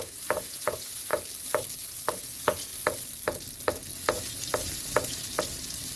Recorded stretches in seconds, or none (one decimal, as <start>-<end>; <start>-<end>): 1.1-2.1; 2.7-6.0